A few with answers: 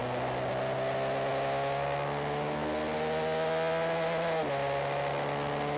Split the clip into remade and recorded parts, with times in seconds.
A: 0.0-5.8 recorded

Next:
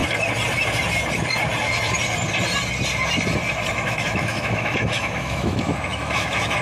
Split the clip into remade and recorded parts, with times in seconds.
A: 0.0-3.7 recorded; 3.7-6.6 remade

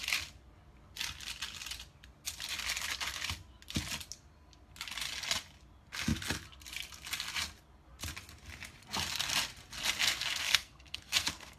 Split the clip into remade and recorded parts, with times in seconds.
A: 0.0-10.0 recorded; 10.0-11.6 remade

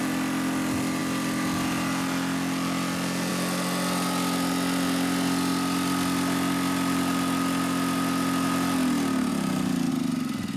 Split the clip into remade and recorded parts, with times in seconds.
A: 0.0-10.6 recorded

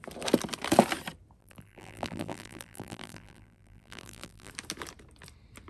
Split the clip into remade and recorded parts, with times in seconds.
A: 0.0-1.4 recorded; 1.4-4.5 remade; 4.5-5.7 recorded

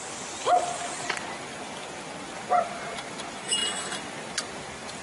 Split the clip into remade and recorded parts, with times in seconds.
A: 0.0-5.0 recorded

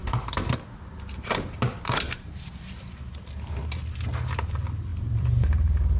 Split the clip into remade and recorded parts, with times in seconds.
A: 0.0-3.6 remade; 3.6-4.9 recorded; 4.9-6.0 remade

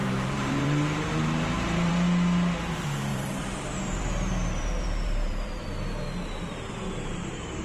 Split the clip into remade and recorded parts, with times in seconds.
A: 0.0-1.9 remade; 1.9-3.1 recorded; 3.1-5.6 remade; 5.6-7.6 recorded